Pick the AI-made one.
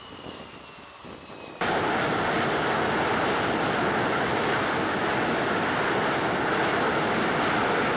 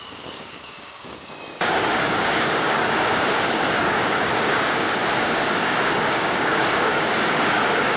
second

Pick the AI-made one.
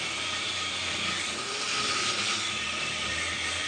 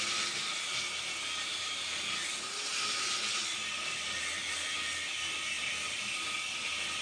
first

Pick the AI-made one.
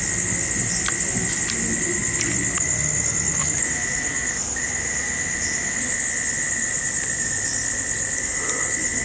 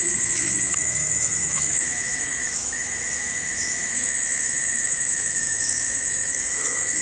second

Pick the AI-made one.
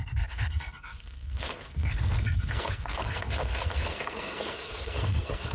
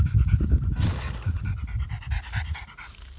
first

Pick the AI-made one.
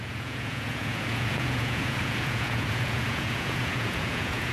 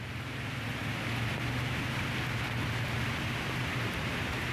first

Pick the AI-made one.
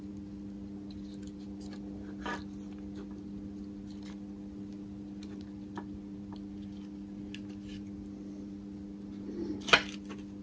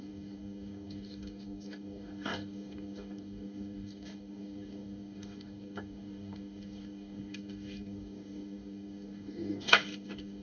second